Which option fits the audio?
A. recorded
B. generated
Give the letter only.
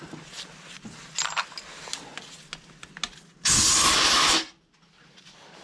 A